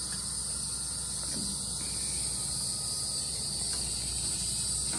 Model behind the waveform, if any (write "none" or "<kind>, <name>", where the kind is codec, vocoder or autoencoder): none